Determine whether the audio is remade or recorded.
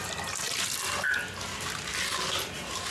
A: recorded